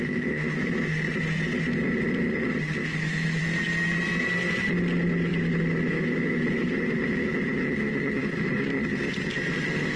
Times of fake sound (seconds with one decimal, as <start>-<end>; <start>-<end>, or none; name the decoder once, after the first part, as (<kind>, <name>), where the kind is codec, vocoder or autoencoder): 0.0-0.8 (autoencoder, DAC-VAE); 2.8-3.4; 5.3-8.5